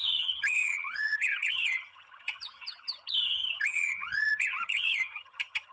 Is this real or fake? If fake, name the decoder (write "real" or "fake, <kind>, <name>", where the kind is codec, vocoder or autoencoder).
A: fake, vocoder, HiFi-GAN